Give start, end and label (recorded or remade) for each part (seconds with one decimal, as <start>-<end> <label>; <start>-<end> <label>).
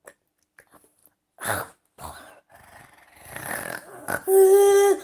0.0-5.0 recorded